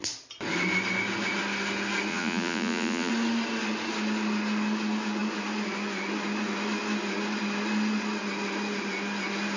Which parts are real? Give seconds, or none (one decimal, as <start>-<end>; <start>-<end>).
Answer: 0.0-2.1; 3.1-9.6